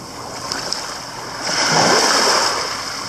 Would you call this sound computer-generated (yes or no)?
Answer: no